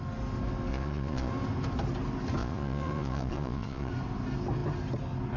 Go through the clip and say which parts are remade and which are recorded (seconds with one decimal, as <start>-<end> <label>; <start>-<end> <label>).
0.0-0.7 recorded; 0.7-1.3 remade; 1.3-2.4 recorded; 2.4-3.9 remade; 3.9-5.4 recorded